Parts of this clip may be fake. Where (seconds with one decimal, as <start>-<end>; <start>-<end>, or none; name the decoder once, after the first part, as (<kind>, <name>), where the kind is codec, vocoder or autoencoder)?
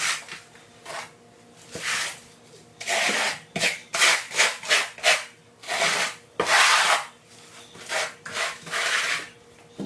4.1-4.6 (autoencoder, DAC-VAE); 8.3-9.0